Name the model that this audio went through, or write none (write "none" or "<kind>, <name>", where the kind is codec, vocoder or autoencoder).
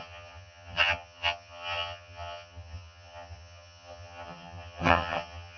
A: vocoder, HiFi-GAN